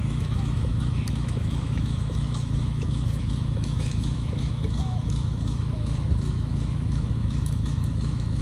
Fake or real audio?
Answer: fake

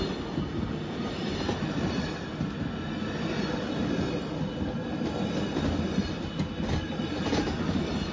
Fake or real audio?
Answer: real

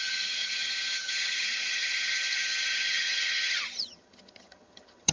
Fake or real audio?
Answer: fake